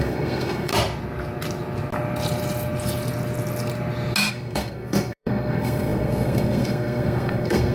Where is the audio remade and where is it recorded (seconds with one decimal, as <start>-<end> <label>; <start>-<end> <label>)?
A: 0.0-0.7 remade; 0.7-4.3 recorded; 4.3-7.7 remade